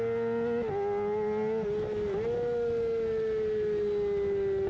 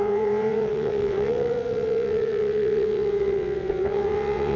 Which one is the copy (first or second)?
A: second